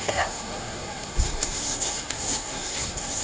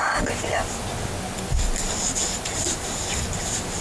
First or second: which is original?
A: second